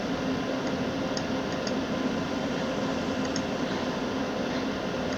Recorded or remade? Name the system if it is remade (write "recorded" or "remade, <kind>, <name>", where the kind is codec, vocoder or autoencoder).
recorded